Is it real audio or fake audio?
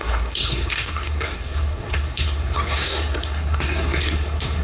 fake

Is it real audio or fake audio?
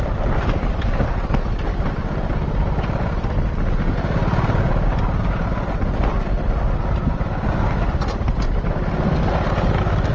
real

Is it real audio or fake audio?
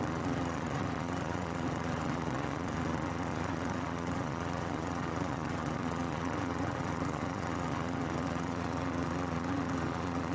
fake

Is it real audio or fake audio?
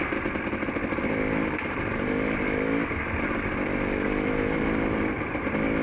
real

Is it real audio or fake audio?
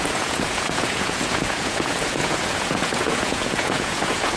fake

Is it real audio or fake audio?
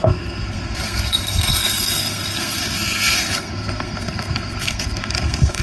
fake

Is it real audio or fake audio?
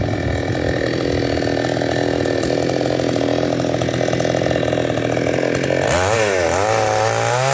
real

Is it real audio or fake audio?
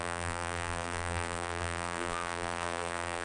fake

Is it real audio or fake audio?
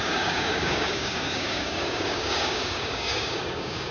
fake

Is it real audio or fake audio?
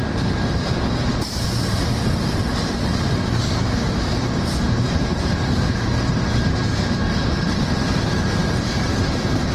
fake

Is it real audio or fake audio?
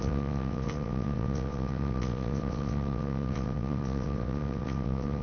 fake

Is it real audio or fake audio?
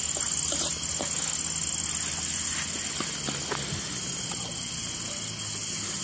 real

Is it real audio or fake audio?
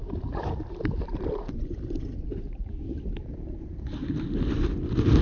real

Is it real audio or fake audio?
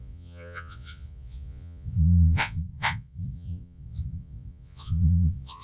fake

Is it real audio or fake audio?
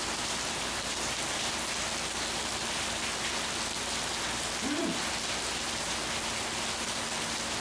real